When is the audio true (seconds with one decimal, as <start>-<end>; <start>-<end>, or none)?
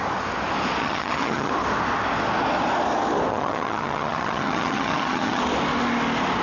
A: 0.0-0.8; 1.5-3.3; 5.4-6.4